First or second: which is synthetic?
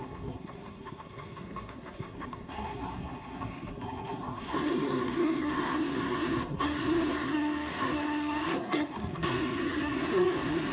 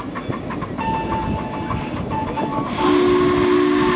first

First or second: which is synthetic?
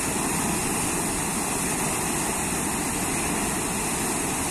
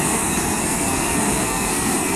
second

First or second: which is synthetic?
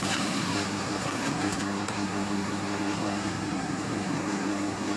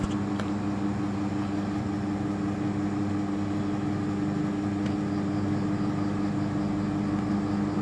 first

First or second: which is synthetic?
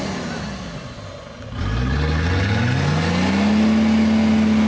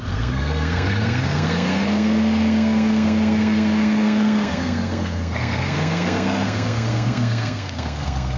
second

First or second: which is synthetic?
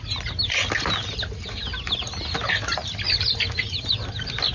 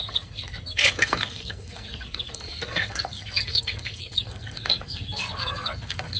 second